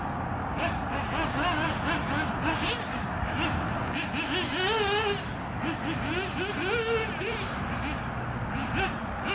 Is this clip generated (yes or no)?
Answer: no